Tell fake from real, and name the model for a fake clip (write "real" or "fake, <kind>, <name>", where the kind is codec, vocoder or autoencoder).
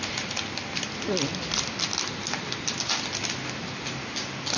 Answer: real